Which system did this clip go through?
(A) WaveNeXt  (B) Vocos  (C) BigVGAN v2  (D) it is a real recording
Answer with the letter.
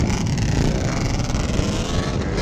C